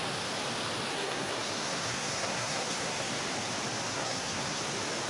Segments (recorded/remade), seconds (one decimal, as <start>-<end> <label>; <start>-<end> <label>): 0.0-0.9 recorded; 0.9-3.1 remade; 3.1-3.9 recorded; 3.9-4.6 remade; 4.6-5.1 recorded